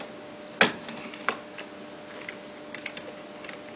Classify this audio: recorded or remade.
recorded